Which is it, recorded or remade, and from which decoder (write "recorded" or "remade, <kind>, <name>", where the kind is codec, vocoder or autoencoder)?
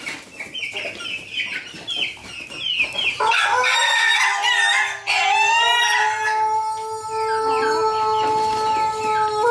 recorded